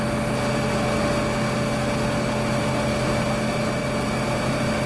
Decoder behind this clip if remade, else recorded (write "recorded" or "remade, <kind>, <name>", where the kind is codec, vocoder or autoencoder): recorded